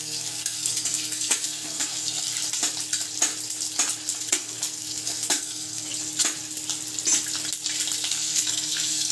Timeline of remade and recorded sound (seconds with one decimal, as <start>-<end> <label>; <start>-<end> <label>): 0.0-2.3 remade; 2.3-4.3 recorded; 4.3-5.9 remade; 5.9-8.1 recorded; 8.1-9.1 remade